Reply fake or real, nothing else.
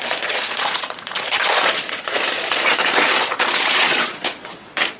fake